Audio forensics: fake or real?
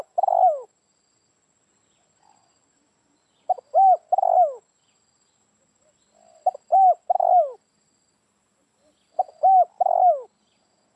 real